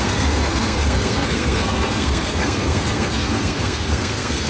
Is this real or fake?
fake